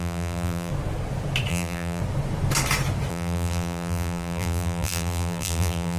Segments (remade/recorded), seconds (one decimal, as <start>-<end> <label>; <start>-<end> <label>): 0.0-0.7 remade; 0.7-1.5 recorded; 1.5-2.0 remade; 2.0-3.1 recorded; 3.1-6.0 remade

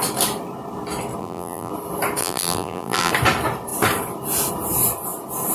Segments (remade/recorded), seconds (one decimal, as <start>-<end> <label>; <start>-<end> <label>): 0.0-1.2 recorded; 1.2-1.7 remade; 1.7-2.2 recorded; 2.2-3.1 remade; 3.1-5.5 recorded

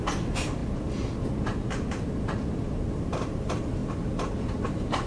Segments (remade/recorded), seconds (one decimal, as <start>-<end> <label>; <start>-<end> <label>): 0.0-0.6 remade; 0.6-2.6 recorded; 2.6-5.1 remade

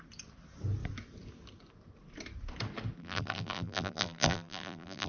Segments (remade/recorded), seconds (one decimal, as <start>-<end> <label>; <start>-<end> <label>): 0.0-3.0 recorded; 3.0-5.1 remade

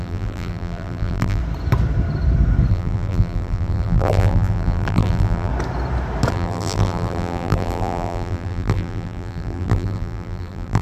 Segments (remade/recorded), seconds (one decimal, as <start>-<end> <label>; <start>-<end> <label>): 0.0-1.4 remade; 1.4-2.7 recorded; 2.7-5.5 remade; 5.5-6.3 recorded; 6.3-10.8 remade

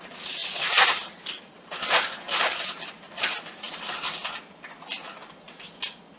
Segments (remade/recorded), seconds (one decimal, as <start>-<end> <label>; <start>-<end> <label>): 0.0-4.2 remade; 4.2-6.2 recorded

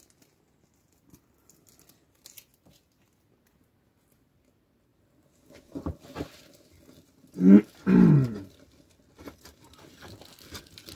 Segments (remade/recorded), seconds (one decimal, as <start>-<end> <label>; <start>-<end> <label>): 0.0-11.0 recorded

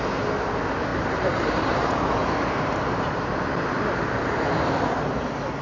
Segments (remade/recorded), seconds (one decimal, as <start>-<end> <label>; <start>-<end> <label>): 0.0-0.9 recorded; 0.9-3.7 remade; 3.7-5.6 recorded